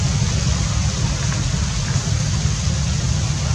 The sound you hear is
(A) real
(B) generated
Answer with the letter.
A